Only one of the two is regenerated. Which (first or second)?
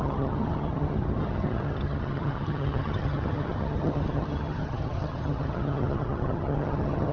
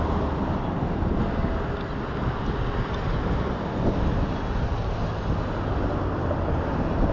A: first